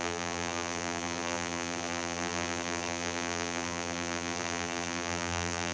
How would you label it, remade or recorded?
remade